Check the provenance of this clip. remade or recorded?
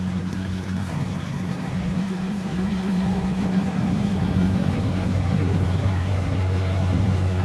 remade